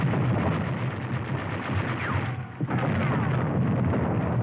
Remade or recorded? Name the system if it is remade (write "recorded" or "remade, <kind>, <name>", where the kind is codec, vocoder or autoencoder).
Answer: recorded